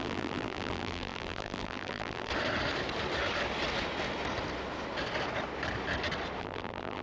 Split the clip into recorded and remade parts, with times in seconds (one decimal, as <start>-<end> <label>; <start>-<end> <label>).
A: 0.0-2.3 remade; 2.3-6.4 recorded; 6.4-7.0 remade